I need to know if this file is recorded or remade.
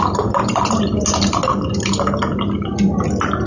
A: recorded